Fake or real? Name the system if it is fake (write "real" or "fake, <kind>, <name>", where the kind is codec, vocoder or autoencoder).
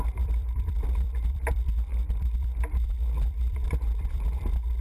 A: fake, vocoder, BigVGAN v2